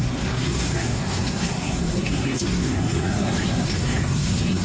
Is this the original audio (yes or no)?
no